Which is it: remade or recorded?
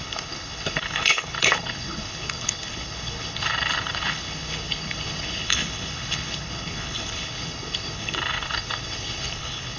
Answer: remade